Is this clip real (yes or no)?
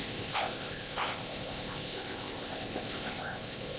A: no